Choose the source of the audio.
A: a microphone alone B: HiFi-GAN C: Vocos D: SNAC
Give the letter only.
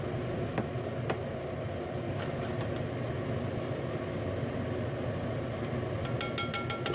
A